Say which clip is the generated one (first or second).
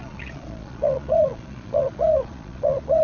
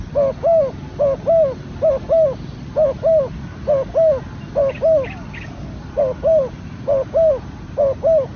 first